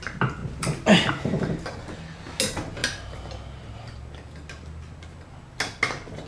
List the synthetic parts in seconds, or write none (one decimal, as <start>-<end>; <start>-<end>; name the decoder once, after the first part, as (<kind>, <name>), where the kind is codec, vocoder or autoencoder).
none